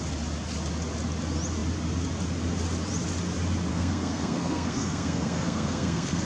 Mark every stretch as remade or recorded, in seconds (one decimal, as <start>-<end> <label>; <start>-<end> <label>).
0.0-3.7 recorded; 3.7-6.2 remade